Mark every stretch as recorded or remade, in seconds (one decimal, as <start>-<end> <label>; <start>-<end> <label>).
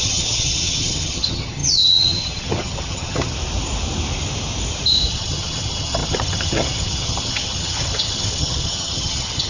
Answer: 0.0-3.3 remade; 3.3-5.1 recorded; 5.1-9.5 remade